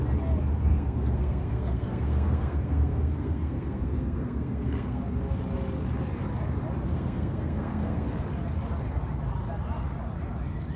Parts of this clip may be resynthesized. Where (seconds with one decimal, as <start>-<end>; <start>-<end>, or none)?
0.7-5.0; 6.9-8.2